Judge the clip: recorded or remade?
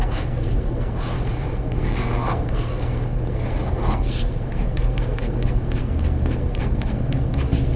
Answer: remade